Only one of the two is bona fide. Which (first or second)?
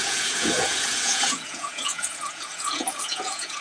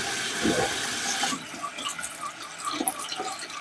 second